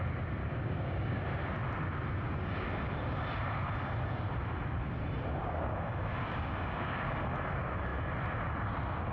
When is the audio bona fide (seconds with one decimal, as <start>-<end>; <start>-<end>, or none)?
0.0-0.4; 1.2-5.4; 7.2-9.1